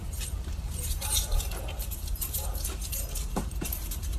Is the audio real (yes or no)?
no